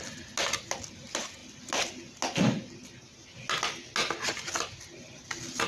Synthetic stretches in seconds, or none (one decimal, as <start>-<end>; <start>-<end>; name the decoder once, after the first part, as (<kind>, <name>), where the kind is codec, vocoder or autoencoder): none